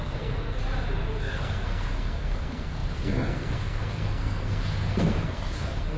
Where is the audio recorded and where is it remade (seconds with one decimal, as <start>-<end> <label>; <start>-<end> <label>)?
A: 0.0-0.6 remade; 0.6-1.2 recorded; 1.2-6.0 remade